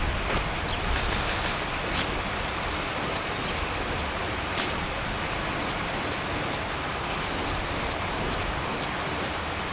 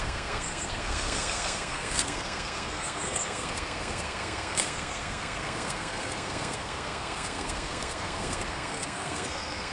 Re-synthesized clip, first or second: second